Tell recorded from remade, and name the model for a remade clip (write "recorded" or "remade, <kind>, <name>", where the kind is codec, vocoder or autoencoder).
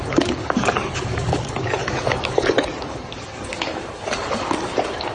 remade, codec, DAC